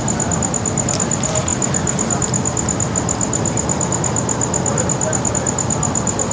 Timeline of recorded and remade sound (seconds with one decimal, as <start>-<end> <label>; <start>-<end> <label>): 0.0-6.3 recorded